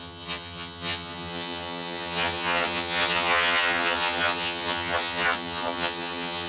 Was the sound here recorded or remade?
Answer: remade